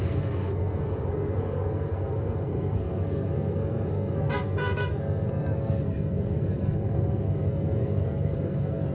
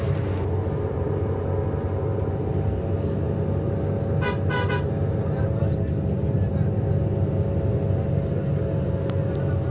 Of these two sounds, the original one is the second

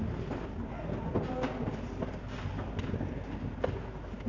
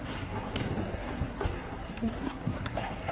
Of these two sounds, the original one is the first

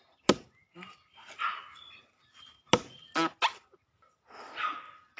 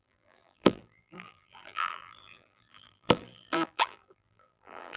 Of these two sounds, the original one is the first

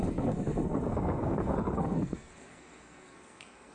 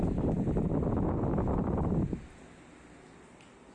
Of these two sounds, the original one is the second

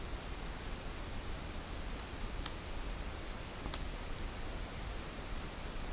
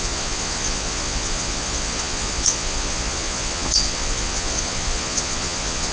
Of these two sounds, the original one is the first